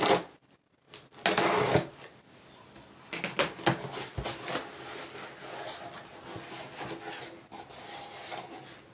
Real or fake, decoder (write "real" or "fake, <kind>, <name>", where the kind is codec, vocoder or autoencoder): real